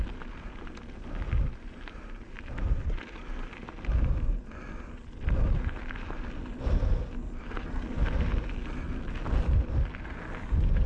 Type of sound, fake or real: real